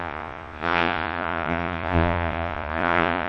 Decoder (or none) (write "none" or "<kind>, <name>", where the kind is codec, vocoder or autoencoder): vocoder, Vocos